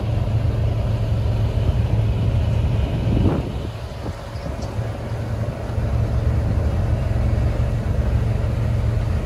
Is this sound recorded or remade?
recorded